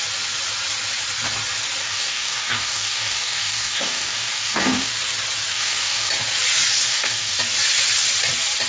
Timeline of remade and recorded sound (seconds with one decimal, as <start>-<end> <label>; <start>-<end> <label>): 0.0-1.8 recorded; 1.8-4.9 remade; 4.9-5.5 recorded; 5.5-6.1 remade; 6.1-6.9 recorded; 6.9-7.4 remade; 7.4-8.7 recorded